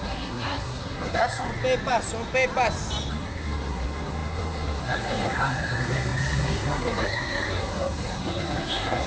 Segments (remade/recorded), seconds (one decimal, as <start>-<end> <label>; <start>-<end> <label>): 0.0-1.5 remade; 1.5-3.1 recorded; 3.1-9.1 remade